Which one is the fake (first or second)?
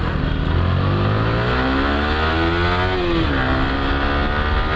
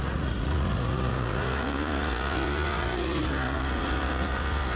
second